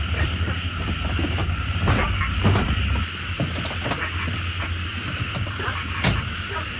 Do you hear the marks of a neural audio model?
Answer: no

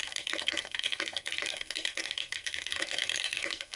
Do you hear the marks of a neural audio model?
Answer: yes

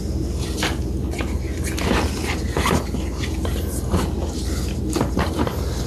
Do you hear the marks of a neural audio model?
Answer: no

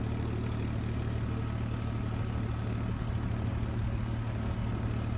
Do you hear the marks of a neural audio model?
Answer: no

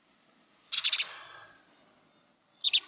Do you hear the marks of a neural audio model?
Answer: no